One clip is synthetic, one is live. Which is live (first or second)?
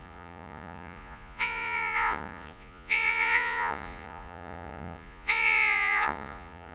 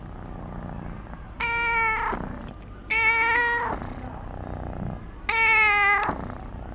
second